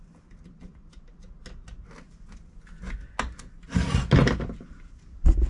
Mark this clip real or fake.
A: real